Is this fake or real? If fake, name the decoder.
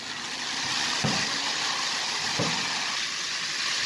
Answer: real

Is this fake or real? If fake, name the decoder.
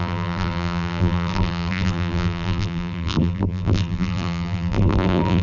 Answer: fake, vocoder, BigVGAN v2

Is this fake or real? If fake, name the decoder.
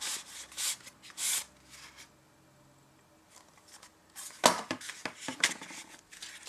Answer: real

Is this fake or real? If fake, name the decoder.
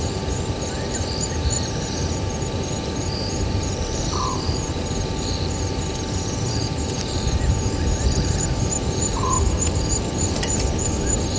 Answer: fake, vocoder, BigVGAN v2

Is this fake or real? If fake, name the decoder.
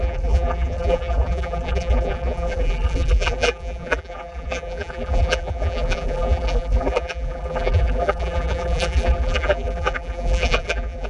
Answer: fake, vocoder, BigVGAN v2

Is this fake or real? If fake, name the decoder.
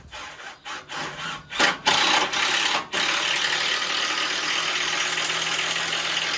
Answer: real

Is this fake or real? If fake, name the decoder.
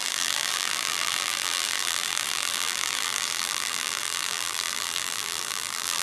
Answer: fake, vocoder, BigVGAN v2